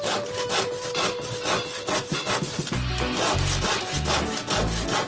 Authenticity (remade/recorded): recorded